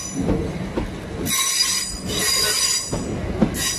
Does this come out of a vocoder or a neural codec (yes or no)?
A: no